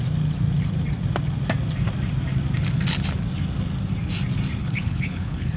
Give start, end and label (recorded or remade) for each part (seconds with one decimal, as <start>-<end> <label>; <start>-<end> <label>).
0.0-4.6 recorded; 4.6-5.6 remade

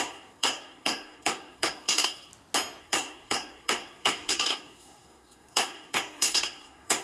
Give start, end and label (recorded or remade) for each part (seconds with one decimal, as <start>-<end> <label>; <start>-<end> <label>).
0.0-2.3 remade; 2.3-2.8 recorded; 2.8-7.0 remade

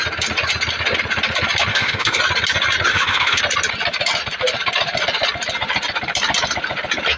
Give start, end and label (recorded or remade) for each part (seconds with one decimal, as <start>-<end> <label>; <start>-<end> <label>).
0.0-1.7 recorded; 1.7-2.2 remade; 2.2-2.9 recorded; 2.9-3.4 remade; 3.4-7.2 recorded

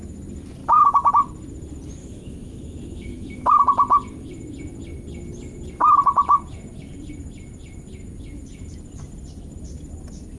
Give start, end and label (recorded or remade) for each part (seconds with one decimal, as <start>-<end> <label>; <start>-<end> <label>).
0.0-0.6 recorded; 0.6-1.1 remade; 1.1-2.0 recorded; 2.0-3.5 remade; 3.5-10.4 recorded

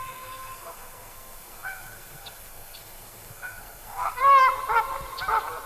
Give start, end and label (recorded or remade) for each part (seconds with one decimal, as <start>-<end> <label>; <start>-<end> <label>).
0.0-4.2 remade; 4.2-5.7 recorded

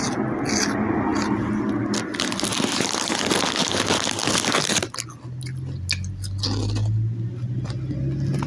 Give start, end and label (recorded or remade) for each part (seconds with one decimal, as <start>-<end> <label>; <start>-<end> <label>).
0.0-8.5 recorded

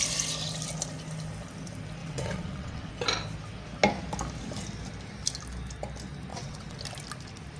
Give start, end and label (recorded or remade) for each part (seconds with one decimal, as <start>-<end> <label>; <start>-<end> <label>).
0.0-2.0 recorded; 2.0-2.9 remade; 2.9-6.3 recorded; 6.3-6.8 remade; 6.8-7.6 recorded

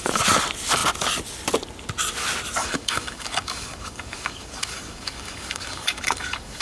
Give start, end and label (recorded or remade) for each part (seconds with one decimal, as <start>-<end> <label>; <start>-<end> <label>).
0.0-2.6 recorded; 2.6-6.6 remade